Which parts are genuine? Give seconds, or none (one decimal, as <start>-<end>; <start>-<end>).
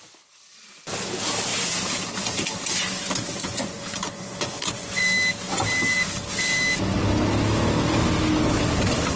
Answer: 0.0-3.4; 5.0-9.2